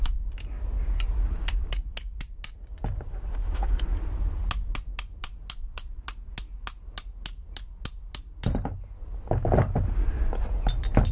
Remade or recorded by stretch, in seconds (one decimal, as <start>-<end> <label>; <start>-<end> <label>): 0.0-3.3 recorded; 3.3-3.8 remade; 3.8-11.1 recorded